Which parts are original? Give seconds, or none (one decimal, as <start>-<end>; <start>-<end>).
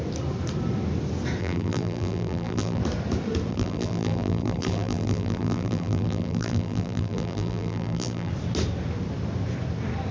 0.0-1.4; 2.8-3.5; 8.3-10.1